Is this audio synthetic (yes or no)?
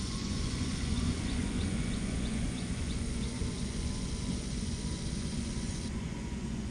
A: yes